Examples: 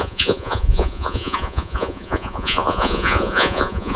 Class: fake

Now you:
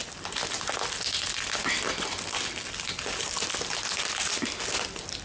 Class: real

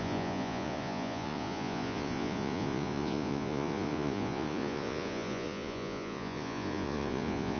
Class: fake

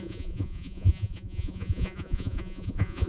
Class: fake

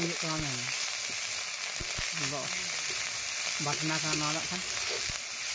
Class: real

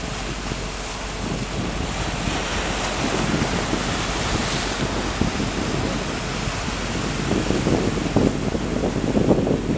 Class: real